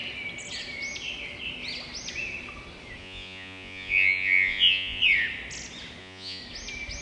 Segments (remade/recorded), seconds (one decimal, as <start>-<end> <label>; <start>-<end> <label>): 0.0-3.0 recorded; 3.0-5.0 remade; 5.0-6.0 recorded; 6.0-6.4 remade; 6.4-7.0 recorded